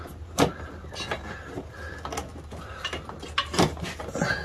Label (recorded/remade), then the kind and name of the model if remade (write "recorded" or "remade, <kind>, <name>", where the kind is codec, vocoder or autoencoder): recorded